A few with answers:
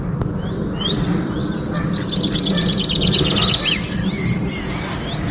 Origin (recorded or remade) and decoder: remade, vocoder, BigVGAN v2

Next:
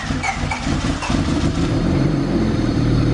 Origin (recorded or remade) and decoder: remade, vocoder, BigVGAN v2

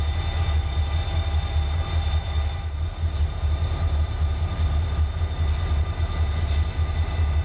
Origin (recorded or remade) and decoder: recorded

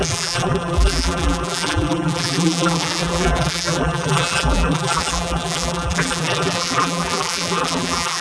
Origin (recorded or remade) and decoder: remade, vocoder, BigVGAN v2